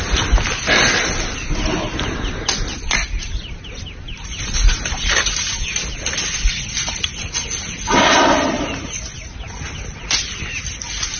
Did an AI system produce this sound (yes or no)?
no